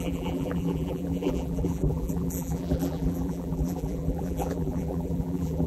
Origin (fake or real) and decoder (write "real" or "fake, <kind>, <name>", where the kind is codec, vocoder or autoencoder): fake, vocoder, BigVGAN v2